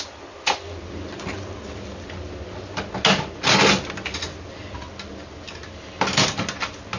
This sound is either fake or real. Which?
real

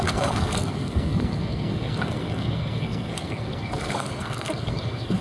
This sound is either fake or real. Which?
fake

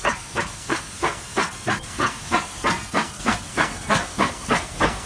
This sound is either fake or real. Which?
fake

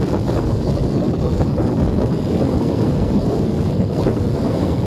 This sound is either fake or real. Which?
fake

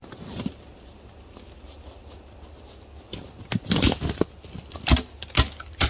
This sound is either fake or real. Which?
real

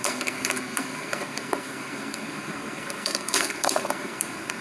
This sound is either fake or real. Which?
fake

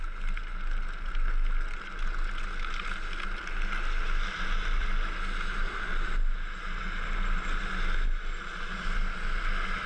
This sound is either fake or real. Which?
real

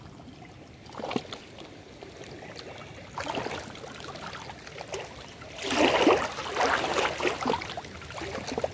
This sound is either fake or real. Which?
real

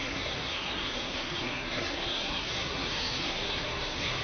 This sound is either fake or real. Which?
fake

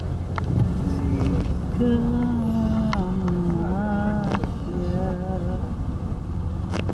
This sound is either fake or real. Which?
real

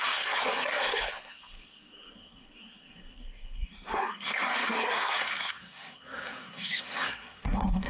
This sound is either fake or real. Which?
fake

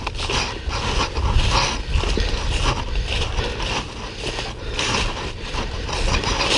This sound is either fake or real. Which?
real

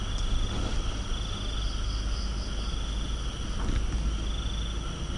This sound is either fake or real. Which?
real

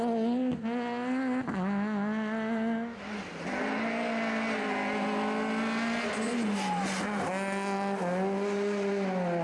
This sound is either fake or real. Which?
real